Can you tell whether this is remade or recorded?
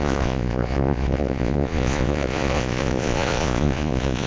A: remade